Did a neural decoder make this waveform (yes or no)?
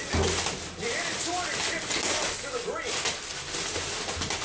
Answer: no